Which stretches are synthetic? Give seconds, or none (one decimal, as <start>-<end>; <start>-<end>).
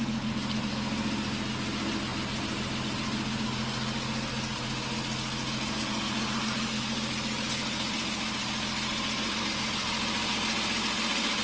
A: 5.4-6.3